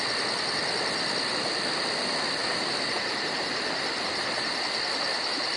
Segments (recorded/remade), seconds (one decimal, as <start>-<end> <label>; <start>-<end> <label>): 0.0-5.6 recorded